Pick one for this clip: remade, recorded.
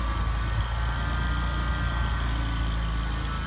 recorded